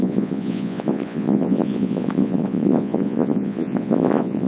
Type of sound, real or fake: fake